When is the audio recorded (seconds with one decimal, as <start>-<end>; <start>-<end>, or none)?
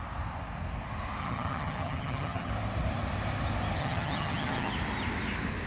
0.0-1.2; 2.5-3.8; 4.7-5.7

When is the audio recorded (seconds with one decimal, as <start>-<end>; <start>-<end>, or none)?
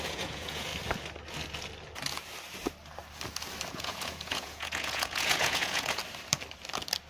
0.7-3.7; 6.0-7.1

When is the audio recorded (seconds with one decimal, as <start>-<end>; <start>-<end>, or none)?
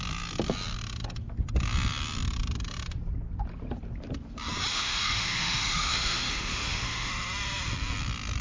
0.0-4.7; 7.1-8.4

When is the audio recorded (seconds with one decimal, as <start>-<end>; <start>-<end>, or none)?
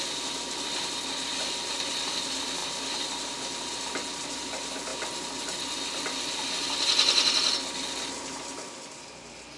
0.0-9.6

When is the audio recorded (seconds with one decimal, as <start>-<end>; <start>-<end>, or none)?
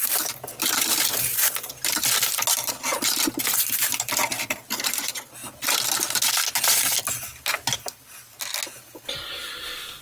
0.0-10.0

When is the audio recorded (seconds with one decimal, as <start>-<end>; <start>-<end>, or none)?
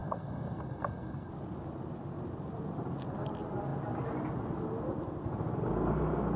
1.3-6.4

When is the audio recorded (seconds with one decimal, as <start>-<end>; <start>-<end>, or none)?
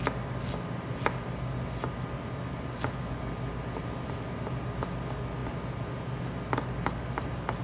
0.0-7.6